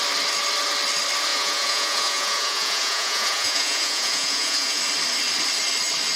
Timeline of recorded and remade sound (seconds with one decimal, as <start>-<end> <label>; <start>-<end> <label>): 0.0-1.3 recorded; 1.3-4.8 remade; 4.8-6.2 recorded